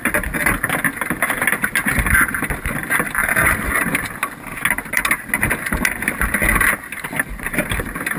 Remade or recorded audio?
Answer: recorded